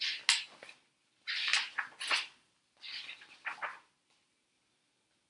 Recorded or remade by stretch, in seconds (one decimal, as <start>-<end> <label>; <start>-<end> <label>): 0.0-5.3 recorded